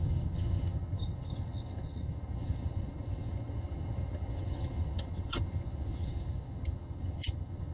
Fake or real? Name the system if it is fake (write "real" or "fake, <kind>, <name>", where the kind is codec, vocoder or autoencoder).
fake, vocoder, HiFi-GAN